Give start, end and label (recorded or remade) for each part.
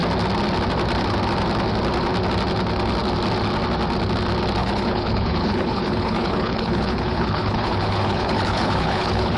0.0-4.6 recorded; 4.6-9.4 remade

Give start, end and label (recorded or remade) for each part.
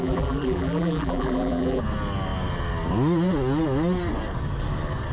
0.0-1.8 remade; 1.8-5.1 recorded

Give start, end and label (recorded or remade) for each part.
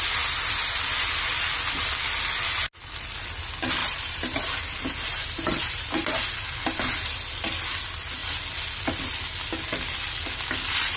0.0-3.8 recorded; 3.8-4.4 remade; 4.4-5.1 recorded; 5.1-6.0 remade; 6.0-11.0 recorded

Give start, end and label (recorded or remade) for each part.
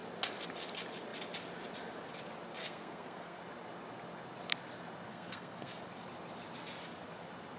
0.0-2.6 recorded; 2.6-3.4 remade; 3.4-5.1 recorded; 5.1-5.8 remade; 5.8-7.6 recorded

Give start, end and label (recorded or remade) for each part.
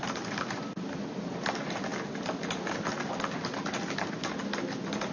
0.0-5.1 recorded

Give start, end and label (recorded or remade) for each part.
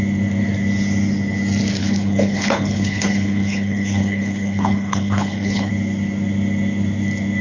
0.0-1.8 recorded; 1.8-5.7 remade; 5.7-7.4 recorded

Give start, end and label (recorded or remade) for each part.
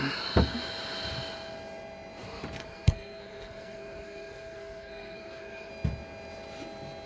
0.0-2.6 recorded; 2.6-5.7 remade; 5.7-7.1 recorded